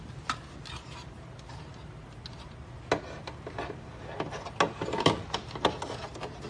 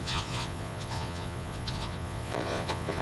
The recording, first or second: first